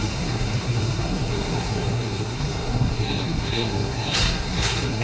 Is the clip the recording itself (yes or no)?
no